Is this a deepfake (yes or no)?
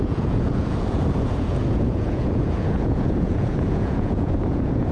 yes